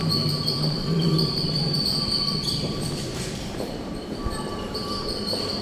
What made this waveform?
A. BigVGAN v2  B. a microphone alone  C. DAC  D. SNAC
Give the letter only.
A